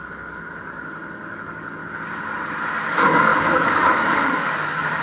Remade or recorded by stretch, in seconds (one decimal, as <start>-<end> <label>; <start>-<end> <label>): 0.0-1.8 remade; 1.8-2.8 recorded; 2.8-5.0 remade